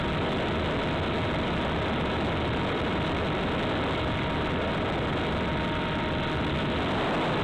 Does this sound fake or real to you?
real